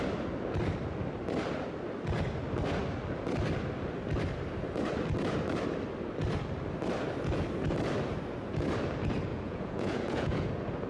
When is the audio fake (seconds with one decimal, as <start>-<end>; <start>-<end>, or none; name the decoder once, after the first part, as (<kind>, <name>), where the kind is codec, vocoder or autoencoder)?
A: 9.3-10.5 (vocoder, Vocos)